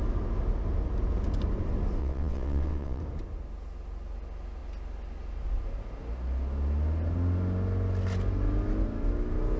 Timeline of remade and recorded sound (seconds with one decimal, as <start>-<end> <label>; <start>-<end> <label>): 0.0-2.0 recorded; 2.0-3.0 remade; 3.0-9.6 recorded

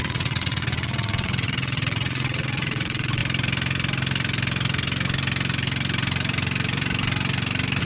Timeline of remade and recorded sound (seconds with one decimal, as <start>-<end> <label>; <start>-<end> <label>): 0.0-3.2 remade; 3.2-7.8 recorded

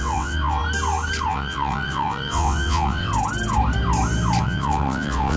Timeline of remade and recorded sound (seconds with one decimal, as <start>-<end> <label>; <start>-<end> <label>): 0.0-0.6 remade; 0.6-1.3 recorded; 1.3-3.1 remade; 3.1-4.4 recorded; 4.4-5.4 remade

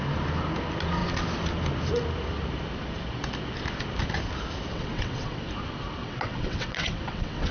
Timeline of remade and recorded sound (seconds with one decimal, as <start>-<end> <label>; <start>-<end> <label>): 0.0-4.7 recorded; 4.7-5.5 remade; 5.5-6.0 recorded; 6.0-7.5 remade

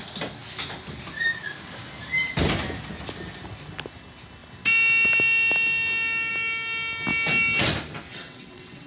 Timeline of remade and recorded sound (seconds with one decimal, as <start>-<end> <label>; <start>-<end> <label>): 0.0-8.1 recorded; 8.1-8.9 remade

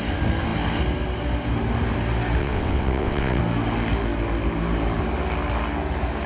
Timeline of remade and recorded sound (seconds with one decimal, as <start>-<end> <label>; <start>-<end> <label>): 0.0-2.4 recorded; 2.4-3.4 remade; 3.4-6.3 recorded

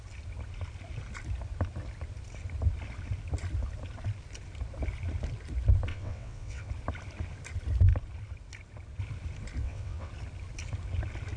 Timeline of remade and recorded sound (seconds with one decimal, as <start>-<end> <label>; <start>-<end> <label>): 0.0-5.9 recorded; 5.9-6.7 remade; 6.7-9.6 recorded; 9.6-10.1 remade; 10.1-11.4 recorded

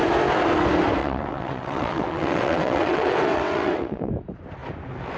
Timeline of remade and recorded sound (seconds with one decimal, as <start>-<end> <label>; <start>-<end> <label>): 0.0-1.0 recorded; 1.0-4.1 remade; 4.1-5.2 recorded